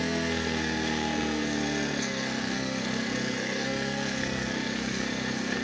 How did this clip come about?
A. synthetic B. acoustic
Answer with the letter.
A